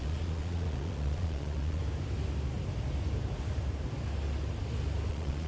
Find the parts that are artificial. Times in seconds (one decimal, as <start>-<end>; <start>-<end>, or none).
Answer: 0.0-1.8; 5.1-5.5